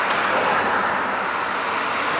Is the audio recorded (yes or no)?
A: yes